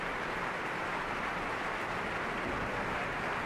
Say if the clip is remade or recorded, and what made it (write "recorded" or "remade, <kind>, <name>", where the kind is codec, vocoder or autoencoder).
recorded